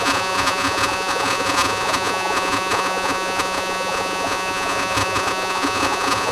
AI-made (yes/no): yes